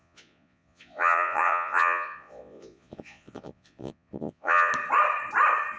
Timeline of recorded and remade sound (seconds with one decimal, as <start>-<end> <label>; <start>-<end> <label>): 0.0-4.7 remade; 4.7-5.8 recorded